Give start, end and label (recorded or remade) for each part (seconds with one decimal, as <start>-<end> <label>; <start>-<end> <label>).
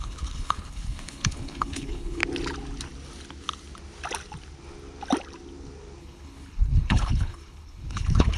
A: 0.0-2.2 remade; 2.2-6.0 recorded; 6.0-8.4 remade